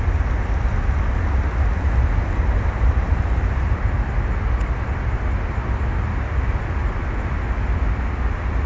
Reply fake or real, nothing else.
real